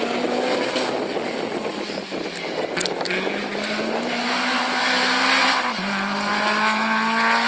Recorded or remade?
recorded